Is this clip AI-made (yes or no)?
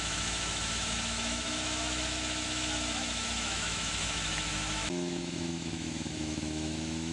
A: yes